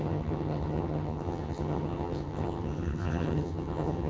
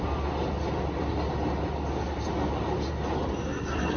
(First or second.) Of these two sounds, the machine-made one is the first